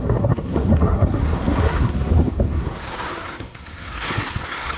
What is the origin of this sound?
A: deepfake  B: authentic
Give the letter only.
A